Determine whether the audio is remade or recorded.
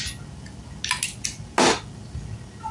recorded